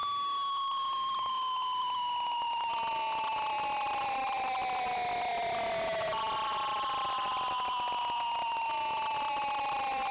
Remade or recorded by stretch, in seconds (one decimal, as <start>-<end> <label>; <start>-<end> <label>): 0.0-10.1 recorded